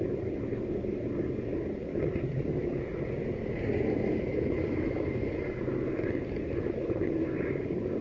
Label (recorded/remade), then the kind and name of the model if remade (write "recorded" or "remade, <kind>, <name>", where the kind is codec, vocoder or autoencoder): recorded